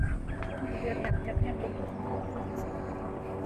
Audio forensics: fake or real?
real